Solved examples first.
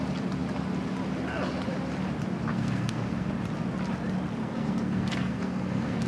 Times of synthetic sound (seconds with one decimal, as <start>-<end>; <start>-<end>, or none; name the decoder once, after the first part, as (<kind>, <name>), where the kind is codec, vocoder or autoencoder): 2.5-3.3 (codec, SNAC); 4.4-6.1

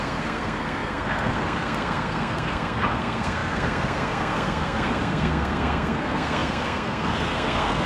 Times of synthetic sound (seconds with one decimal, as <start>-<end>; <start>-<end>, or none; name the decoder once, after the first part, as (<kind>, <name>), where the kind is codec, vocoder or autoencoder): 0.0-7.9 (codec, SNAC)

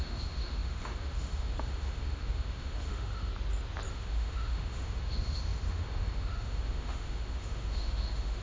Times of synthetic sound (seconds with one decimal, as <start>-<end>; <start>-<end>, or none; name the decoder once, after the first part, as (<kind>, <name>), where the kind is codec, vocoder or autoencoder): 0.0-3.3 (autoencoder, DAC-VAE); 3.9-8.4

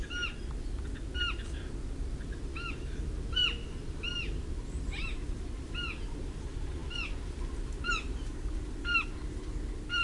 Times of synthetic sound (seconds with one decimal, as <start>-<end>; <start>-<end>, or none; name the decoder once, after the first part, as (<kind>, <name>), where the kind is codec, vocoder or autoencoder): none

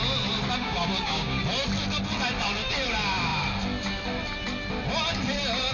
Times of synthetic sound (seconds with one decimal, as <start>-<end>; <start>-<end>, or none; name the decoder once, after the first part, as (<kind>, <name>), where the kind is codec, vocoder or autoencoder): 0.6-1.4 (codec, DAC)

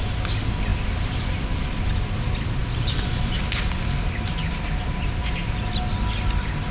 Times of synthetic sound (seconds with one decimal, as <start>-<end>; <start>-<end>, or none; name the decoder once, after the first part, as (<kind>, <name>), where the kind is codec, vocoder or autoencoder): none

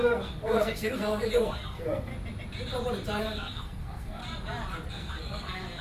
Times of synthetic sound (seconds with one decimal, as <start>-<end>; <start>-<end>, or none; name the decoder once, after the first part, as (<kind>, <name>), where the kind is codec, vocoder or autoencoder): 0.0-2.1 (codec, SNAC); 3.2-4.2; 4.9-5.8